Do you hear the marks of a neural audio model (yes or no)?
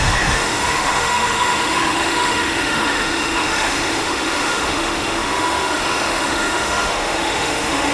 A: yes